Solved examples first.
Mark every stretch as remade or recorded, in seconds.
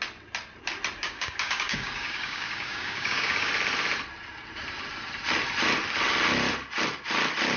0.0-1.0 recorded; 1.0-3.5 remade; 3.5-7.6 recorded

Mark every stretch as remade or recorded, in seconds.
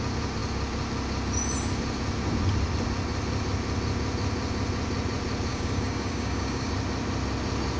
0.0-5.5 recorded; 5.5-6.7 remade; 6.7-7.8 recorded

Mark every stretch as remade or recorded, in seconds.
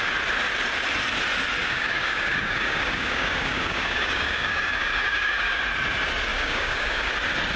0.0-1.6 recorded; 1.6-5.6 remade; 5.6-6.3 recorded; 6.3-7.1 remade; 7.1-7.6 recorded